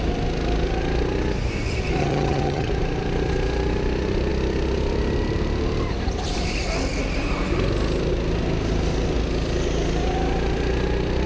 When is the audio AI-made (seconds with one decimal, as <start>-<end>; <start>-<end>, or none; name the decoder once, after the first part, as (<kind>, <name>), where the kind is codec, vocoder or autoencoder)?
2.0-2.7 (vocoder, HiFi-GAN)